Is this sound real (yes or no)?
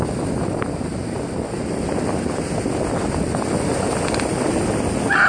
yes